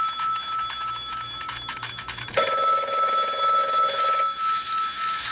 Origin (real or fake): fake